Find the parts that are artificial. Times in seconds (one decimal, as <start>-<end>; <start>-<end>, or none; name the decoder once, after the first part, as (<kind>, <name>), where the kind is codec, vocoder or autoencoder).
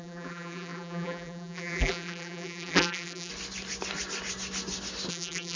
0.0-3.3 (vocoder, BigVGAN v2); 5.1-5.6